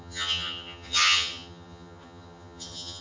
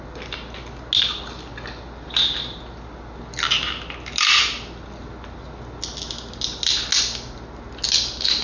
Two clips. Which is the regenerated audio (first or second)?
first